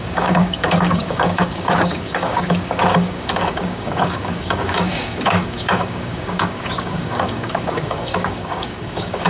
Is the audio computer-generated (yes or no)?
yes